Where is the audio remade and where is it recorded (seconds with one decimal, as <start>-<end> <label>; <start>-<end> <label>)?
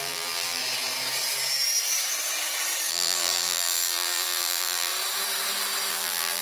0.0-0.6 remade; 0.6-2.9 recorded; 2.9-4.9 remade; 4.9-5.9 recorded; 5.9-6.4 remade